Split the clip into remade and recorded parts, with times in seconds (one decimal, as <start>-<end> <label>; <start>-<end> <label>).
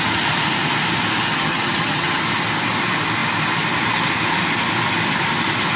0.0-1.2 recorded; 1.2-2.2 remade; 2.2-5.8 recorded